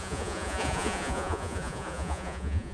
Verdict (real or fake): fake